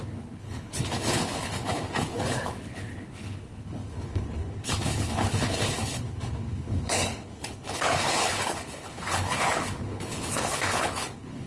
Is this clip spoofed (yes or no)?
yes